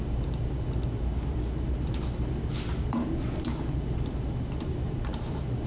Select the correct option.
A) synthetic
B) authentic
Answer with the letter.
A